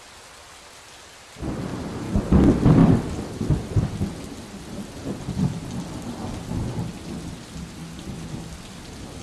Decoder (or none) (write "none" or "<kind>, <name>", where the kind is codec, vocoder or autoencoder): none